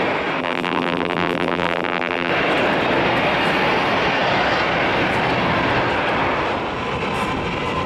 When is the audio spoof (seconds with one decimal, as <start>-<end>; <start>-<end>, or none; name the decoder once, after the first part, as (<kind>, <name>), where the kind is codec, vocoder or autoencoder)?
0.4-2.3 (vocoder, BigVGAN v2)